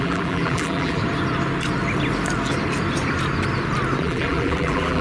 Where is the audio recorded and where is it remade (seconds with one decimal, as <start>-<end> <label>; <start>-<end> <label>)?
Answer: 0.0-1.0 remade; 1.0-4.0 recorded; 4.0-5.0 remade